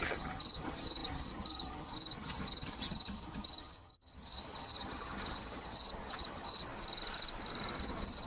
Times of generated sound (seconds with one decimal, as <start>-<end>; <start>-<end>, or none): 0.0-6.7; 7.8-8.3

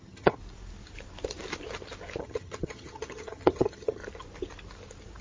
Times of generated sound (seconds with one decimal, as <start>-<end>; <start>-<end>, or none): 0.0-0.4; 2.2-4.0

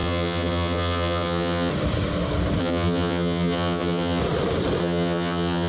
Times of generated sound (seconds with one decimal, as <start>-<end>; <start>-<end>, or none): 0.0-1.7; 2.6-4.2; 4.8-5.7

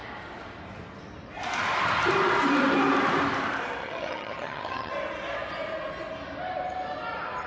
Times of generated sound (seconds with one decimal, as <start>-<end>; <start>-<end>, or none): 3.8-4.9